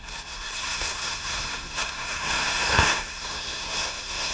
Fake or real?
fake